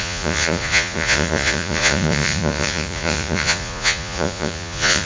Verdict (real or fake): fake